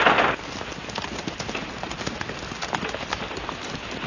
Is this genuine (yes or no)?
yes